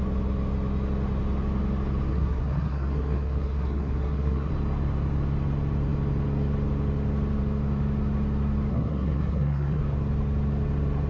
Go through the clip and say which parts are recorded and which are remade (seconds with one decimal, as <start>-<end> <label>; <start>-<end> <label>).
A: 0.0-2.1 recorded; 2.1-4.5 remade; 4.5-8.7 recorded; 8.7-9.8 remade; 9.8-11.1 recorded